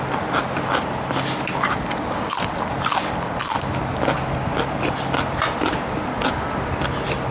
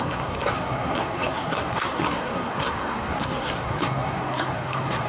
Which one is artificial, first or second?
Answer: second